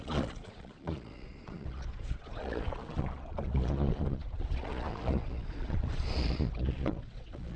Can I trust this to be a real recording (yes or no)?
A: no